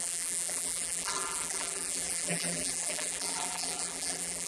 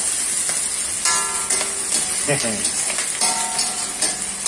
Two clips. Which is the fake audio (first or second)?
first